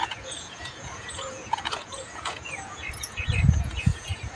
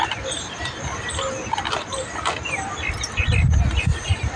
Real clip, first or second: second